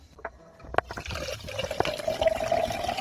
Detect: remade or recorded recorded